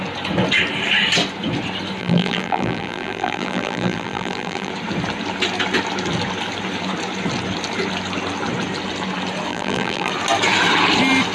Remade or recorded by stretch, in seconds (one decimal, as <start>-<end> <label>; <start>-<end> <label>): 0.0-2.0 recorded; 2.0-4.7 remade; 4.7-9.5 recorded; 9.5-10.1 remade; 10.1-11.3 recorded